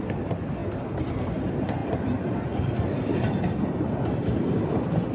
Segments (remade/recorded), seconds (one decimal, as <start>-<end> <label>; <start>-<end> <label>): 0.0-0.6 remade; 0.6-1.4 recorded; 1.4-5.1 remade